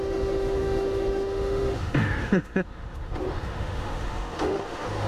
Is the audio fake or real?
fake